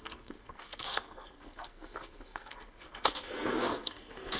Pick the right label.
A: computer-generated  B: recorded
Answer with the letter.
A